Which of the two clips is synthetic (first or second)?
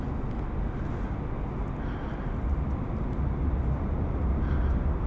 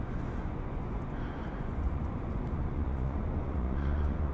second